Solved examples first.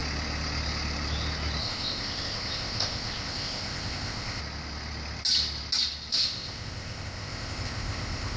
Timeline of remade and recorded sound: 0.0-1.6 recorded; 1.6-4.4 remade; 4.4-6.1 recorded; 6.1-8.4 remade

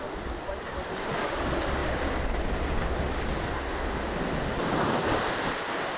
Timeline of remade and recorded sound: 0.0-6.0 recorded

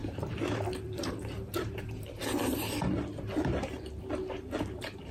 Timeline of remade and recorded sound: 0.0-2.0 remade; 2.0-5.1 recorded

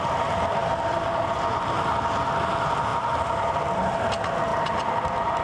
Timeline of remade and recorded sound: 0.0-0.6 recorded; 0.6-1.2 remade; 1.2-2.9 recorded; 2.9-4.1 remade; 4.1-4.5 recorded; 4.5-5.4 remade

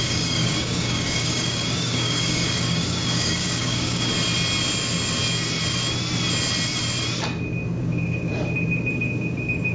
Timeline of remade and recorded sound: 0.0-4.1 remade; 4.1-7.8 recorded; 7.8-8.3 remade; 8.3-8.9 recorded; 8.9-9.7 remade

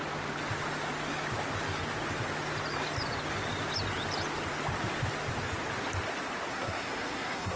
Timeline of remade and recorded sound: 0.0-6.5 recorded; 6.5-7.6 remade

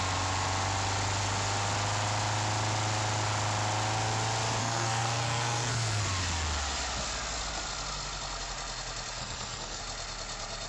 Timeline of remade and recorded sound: 0.0-4.6 recorded; 4.6-6.0 remade; 6.0-9.2 recorded; 9.2-9.8 remade; 9.8-10.7 recorded